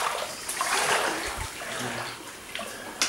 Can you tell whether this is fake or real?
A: real